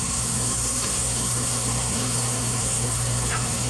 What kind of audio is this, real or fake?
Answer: fake